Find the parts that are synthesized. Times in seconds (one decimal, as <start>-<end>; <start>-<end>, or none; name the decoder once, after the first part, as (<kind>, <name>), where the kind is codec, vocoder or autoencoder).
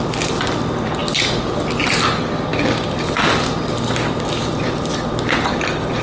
0.0-1.0 (vocoder, BigVGAN v2); 1.8-6.0